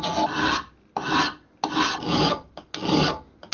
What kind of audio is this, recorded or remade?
recorded